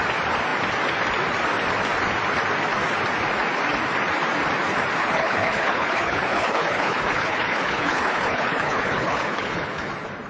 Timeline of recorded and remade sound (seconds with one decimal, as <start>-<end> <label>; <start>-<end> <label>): 0.0-5.0 recorded; 5.0-9.9 remade; 9.9-10.3 recorded